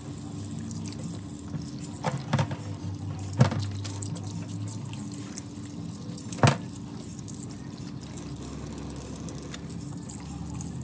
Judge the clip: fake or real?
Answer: real